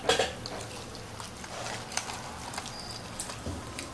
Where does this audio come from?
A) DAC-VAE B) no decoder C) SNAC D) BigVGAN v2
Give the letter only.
B